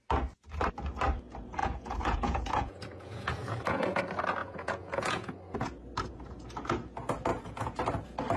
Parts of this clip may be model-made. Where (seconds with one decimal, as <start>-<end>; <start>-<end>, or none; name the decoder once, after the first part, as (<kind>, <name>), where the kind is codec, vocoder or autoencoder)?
1.6-4.0 (vocoder, Vocos); 4.4-5.3; 7.3-7.8